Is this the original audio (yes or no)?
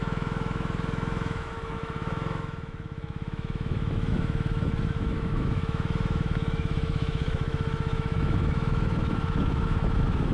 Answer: no